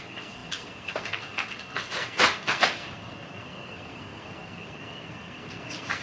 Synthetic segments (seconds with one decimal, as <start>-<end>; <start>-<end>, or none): 0.0-6.0